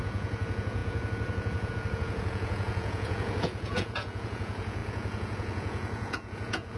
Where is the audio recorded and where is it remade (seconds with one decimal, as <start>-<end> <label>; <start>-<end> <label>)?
0.0-6.8 remade